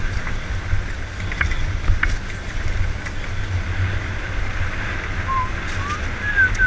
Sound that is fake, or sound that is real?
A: real